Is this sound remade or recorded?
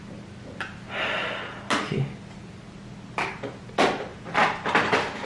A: recorded